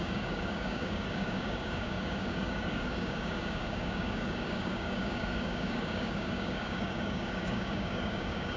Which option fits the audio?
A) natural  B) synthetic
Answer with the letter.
B